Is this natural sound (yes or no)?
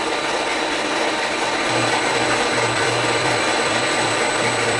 no